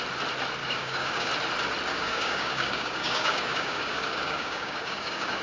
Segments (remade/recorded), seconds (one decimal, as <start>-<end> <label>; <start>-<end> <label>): 0.0-0.6 recorded; 0.6-1.3 remade; 1.3-1.9 recorded; 1.9-5.4 remade